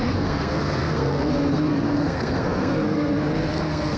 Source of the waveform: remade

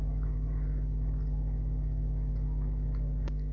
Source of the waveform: recorded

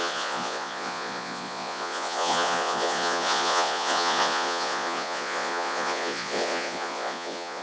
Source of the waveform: remade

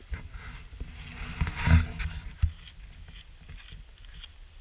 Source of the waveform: recorded